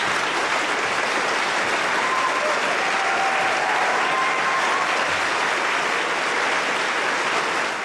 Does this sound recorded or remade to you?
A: recorded